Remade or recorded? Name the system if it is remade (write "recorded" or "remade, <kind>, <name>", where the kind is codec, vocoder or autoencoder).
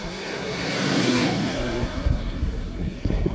remade, codec, SNAC